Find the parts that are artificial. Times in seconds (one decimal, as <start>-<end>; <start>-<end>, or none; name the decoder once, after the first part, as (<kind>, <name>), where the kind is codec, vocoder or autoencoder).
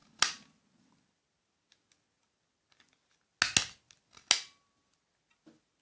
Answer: none